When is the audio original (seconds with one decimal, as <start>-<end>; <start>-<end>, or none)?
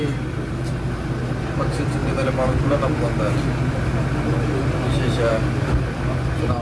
0.0-6.6